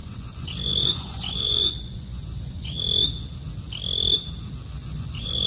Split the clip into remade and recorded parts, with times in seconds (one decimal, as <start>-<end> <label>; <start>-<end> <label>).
0.0-2.8 remade; 2.8-4.8 recorded; 4.8-5.5 remade